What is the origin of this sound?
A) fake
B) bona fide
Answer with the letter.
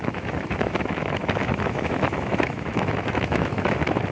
A